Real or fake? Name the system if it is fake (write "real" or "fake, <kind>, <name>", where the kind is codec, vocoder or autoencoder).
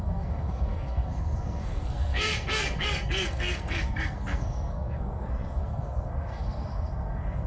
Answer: fake, codec, SNAC